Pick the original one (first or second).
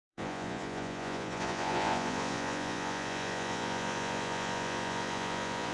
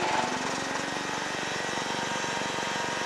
second